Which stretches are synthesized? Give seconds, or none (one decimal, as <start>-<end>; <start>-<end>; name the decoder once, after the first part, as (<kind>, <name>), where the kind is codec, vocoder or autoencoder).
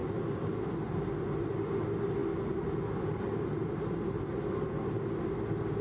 none